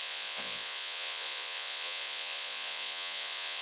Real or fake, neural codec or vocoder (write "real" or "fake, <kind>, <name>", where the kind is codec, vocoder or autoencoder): fake, vocoder, Vocos